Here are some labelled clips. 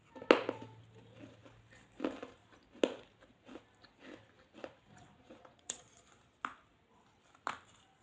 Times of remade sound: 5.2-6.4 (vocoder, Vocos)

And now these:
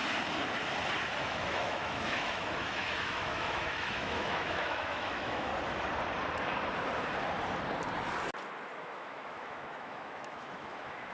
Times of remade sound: 1.2-5.5 (autoencoder, DAC-VAE); 8.8-11.1

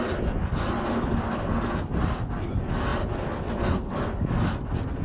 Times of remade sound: none

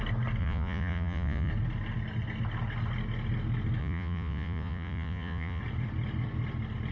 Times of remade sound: 0.4-1.5 (vocoder, Vocos); 3.8-5.6

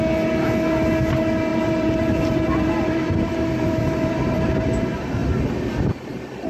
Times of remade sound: 1.5-4.5 (vocoder, BigVGAN v2)